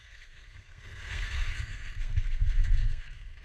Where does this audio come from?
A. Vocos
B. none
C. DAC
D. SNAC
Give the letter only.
D